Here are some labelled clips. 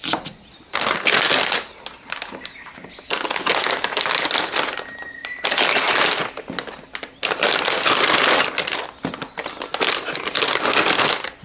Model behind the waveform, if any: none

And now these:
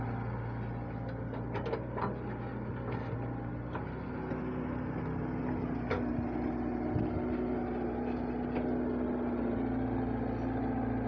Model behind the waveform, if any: none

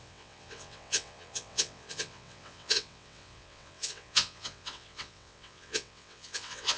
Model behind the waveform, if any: vocoder, WaveNeXt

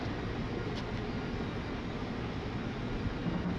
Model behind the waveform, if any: none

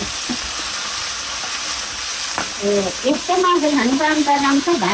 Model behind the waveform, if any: none